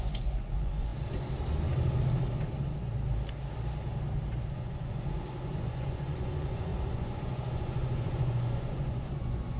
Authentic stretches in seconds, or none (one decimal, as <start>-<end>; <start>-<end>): 0.9-4.5